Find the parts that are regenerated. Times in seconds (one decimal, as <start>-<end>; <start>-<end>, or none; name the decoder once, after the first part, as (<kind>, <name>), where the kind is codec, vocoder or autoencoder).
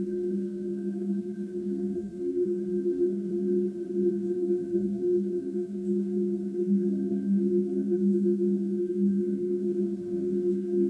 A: 0.0-3.3 (codec, SNAC); 4.1-10.9